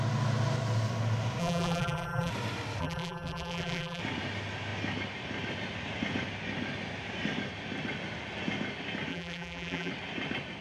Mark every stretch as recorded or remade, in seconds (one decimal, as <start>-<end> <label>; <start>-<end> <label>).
0.0-1.4 recorded; 1.4-2.3 remade; 2.3-2.8 recorded; 2.8-4.0 remade; 4.0-9.1 recorded; 9.1-9.9 remade; 9.9-10.6 recorded